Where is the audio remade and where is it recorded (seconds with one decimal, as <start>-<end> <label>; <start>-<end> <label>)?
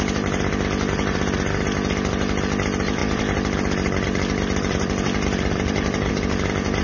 0.0-3.0 recorded; 3.0-6.1 remade; 6.1-6.8 recorded